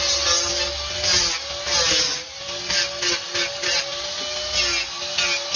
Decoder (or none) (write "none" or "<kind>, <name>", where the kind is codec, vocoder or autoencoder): none